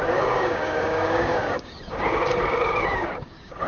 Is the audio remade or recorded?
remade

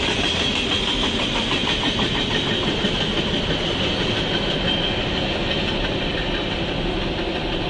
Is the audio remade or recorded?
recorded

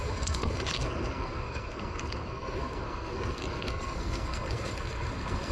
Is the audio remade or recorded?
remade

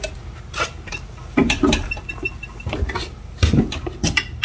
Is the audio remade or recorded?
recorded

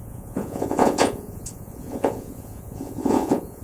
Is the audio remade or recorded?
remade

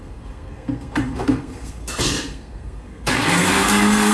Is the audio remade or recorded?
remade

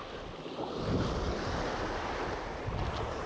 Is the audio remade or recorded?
recorded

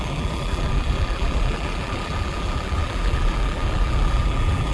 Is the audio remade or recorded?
remade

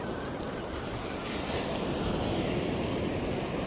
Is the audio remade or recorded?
recorded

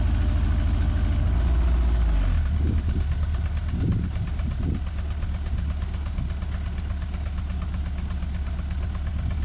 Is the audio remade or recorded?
recorded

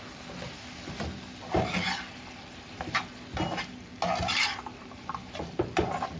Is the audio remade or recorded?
recorded